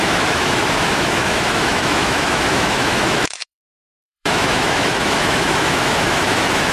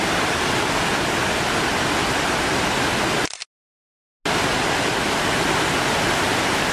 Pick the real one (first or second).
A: second